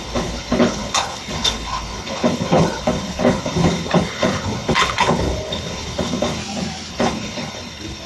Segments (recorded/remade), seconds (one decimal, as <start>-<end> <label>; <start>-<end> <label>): 0.0-6.4 remade; 6.4-6.9 recorded; 6.9-8.1 remade

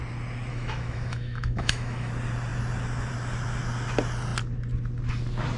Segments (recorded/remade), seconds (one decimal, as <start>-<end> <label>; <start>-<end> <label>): 0.0-0.5 recorded; 0.5-2.1 remade; 2.1-5.6 recorded